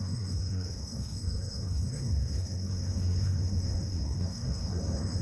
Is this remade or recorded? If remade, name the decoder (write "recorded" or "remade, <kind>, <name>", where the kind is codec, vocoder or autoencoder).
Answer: remade, codec, SNAC